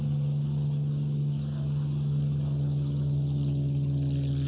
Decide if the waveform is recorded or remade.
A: recorded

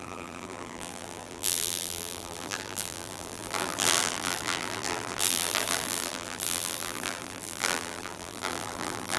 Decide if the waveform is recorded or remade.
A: remade